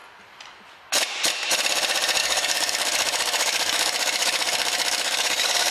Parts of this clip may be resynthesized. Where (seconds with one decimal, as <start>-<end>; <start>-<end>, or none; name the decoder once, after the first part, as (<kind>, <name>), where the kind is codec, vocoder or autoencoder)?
2.2-5.7 (codec, DAC)

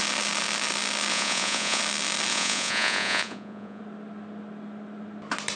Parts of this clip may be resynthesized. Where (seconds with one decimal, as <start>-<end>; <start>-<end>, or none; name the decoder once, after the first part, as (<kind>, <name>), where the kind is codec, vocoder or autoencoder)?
1.1-1.8 (vocoder, Vocos); 2.3-3.8